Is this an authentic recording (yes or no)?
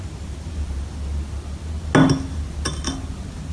yes